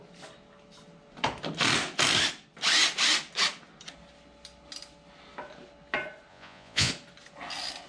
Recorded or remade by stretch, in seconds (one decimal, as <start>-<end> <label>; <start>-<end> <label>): 0.0-6.3 recorded; 6.3-6.9 remade; 6.9-7.9 recorded